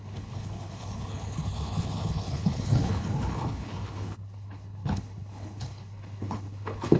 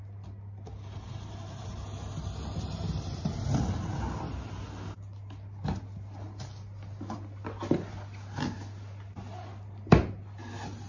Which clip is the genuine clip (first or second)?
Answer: second